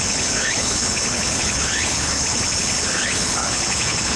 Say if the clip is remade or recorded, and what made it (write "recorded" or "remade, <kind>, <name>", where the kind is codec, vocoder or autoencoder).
remade, codec, HILCodec